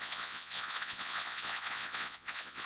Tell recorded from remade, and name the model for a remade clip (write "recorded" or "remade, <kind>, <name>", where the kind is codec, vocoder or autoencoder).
remade, vocoder, Vocos